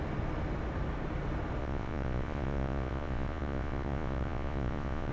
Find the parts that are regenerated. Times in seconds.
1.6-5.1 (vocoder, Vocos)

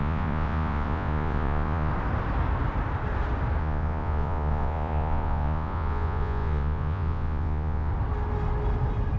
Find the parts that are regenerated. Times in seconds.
0.0-1.9 (vocoder, Vocos); 3.6-7.9

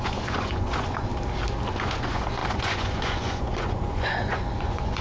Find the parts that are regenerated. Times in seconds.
0.0-1.1 (vocoder, Vocos); 1.7-5.0

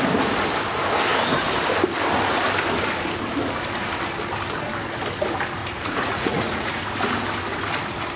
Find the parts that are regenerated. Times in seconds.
5.6-6.8 (vocoder, Vocos)

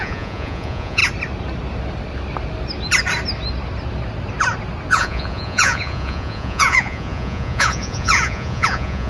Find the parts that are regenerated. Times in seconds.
0.0-1.0 (vocoder, Vocos); 4.9-9.1

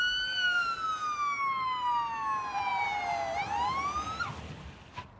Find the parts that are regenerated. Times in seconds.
none